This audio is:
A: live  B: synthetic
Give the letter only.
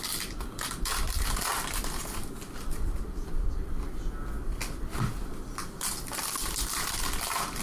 A